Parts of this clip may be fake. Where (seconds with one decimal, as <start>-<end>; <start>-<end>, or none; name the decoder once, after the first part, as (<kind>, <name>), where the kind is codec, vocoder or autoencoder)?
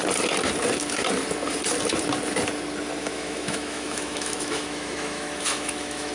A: 3.0-6.1 (autoencoder, DAC-VAE)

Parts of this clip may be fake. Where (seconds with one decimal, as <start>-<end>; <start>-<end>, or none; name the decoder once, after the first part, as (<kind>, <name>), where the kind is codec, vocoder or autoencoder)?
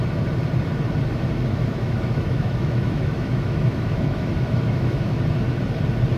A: 1.5-5.2 (autoencoder, DAC-VAE)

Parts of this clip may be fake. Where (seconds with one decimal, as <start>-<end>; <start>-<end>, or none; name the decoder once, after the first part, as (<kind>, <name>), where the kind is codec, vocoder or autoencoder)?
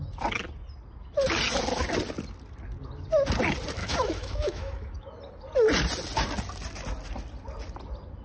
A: 3.8-5.1 (autoencoder, DAC-VAE)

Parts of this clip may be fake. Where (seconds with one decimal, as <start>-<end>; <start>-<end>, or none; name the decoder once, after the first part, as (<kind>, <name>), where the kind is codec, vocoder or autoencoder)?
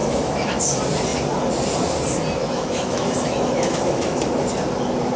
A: 0.0-0.6 (autoencoder, DAC-VAE); 2.4-4.3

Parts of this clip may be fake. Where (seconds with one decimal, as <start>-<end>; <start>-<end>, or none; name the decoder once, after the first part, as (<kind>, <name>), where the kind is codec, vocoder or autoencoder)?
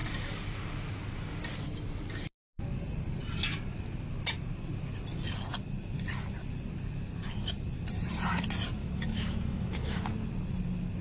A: 8.8-10.0 (autoencoder, DAC-VAE)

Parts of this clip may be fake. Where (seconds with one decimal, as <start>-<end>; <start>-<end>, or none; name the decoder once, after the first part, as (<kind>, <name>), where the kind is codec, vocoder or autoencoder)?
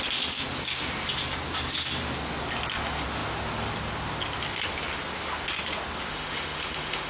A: 6.1-7.1 (autoencoder, DAC-VAE)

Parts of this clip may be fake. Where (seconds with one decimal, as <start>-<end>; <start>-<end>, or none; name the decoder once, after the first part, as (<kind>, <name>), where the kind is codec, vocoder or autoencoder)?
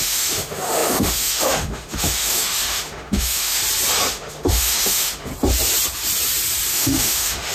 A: 0.0-3.6 (autoencoder, DAC-VAE); 4.1-5.3; 6.7-7.5